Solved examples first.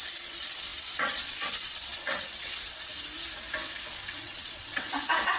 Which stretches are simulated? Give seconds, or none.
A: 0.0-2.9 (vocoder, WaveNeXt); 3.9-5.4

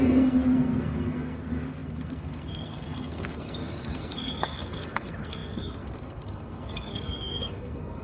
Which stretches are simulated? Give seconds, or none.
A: 0.0-8.0 (codec, SNAC)

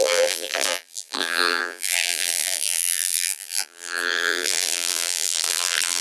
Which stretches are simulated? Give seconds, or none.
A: 0.0-6.0 (vocoder, BigVGAN v2)